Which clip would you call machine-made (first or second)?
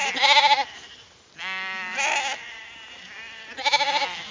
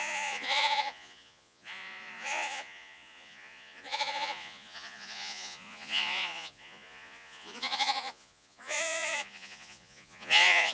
second